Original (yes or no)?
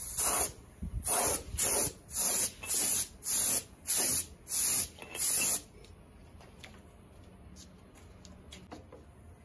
yes